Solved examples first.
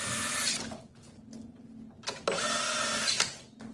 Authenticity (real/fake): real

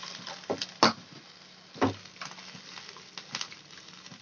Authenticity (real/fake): real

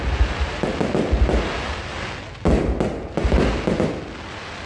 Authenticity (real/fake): real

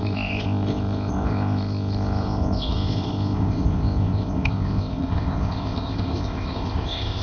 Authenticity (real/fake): fake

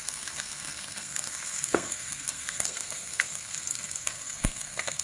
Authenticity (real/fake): fake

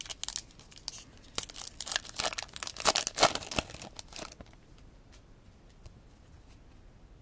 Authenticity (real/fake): real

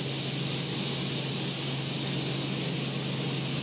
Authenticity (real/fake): real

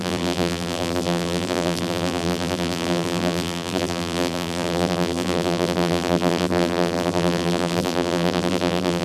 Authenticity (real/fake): fake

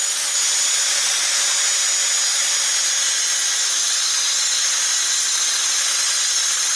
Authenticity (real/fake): real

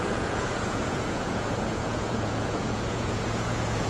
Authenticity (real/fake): fake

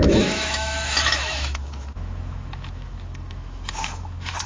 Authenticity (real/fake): fake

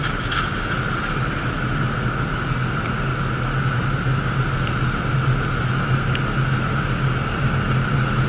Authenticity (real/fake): real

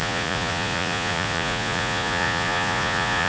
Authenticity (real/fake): fake